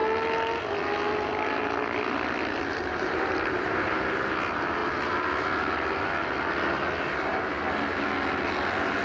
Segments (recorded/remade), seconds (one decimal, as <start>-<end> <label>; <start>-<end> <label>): 0.0-2.7 recorded; 2.7-4.2 remade; 4.2-9.0 recorded